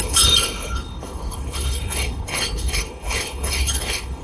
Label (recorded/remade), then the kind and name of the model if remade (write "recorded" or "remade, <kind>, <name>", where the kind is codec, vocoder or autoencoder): remade, codec, HILCodec